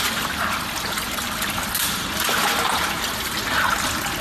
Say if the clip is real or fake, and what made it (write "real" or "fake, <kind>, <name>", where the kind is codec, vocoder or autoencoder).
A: real